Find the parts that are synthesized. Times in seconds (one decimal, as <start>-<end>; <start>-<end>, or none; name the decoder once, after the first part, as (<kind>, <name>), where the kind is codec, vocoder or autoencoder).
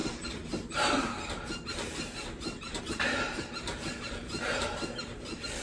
0.0-5.6 (vocoder, BigVGAN v2)